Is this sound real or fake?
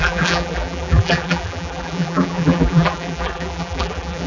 fake